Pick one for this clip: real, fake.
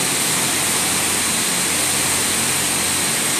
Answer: real